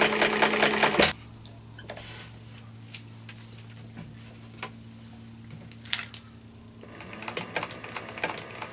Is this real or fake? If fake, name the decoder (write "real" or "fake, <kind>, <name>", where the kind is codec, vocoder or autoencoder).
real